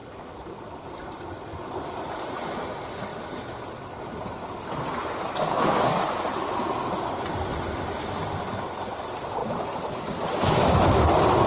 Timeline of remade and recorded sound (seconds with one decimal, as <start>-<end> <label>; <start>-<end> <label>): 0.0-5.5 recorded; 5.5-6.0 remade; 6.0-11.5 recorded

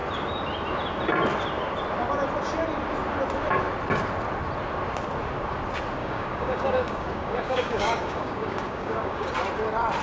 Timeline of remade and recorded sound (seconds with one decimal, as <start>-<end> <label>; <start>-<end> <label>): 0.0-6.0 recorded; 6.0-9.3 remade; 9.3-10.0 recorded

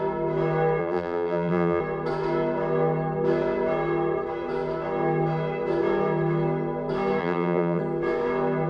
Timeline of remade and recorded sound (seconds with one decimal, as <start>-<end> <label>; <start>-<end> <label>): 0.0-0.8 recorded; 0.8-1.8 remade; 1.8-7.2 recorded; 7.2-7.8 remade; 7.8-8.7 recorded

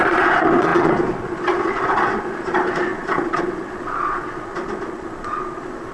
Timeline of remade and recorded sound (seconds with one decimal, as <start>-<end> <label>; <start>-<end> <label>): 0.0-5.9 remade

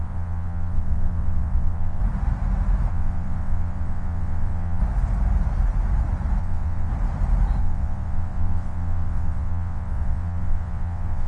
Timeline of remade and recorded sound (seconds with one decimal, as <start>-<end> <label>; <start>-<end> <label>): 0.0-2.0 remade; 2.0-2.9 recorded; 2.9-4.8 remade; 4.8-6.4 recorded; 6.4-6.9 remade; 6.9-7.6 recorded; 7.6-11.3 remade